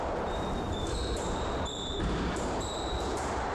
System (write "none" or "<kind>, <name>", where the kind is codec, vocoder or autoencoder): vocoder, BigVGAN v2